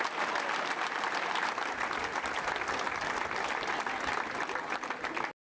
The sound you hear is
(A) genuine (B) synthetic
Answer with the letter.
A